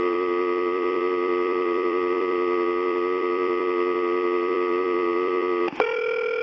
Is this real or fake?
fake